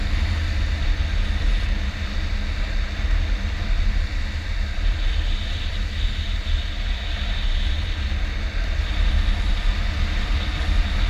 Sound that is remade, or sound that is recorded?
recorded